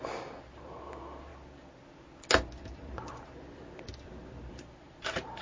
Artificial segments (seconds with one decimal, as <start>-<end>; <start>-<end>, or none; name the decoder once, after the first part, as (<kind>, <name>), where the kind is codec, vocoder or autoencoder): 0.0-1.3 (vocoder, BigVGAN v2); 4.5-5.4